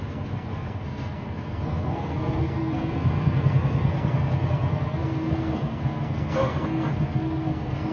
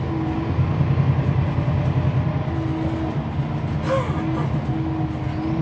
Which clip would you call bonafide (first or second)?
second